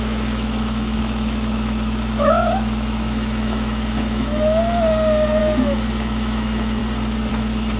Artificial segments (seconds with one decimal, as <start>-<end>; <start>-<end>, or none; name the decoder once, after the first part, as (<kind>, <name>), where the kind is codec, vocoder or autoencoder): 0.0-4.6 (autoencoder, DAC-VAE); 5.4-6.8; 7.3-7.8